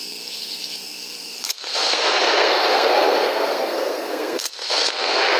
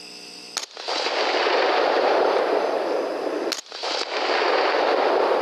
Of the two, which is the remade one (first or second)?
first